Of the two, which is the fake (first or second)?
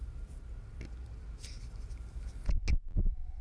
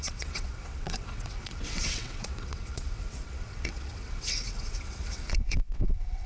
second